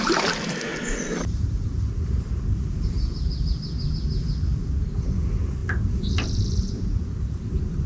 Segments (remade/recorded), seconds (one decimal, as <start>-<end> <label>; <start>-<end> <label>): 0.0-7.9 recorded